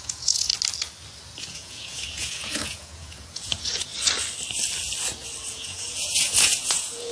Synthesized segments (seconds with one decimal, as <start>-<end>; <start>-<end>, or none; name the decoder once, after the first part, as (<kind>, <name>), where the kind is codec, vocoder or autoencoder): 0.0-0.5 (vocoder, Vocos); 1.4-3.9; 5.5-7.1